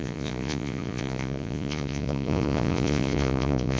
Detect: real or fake fake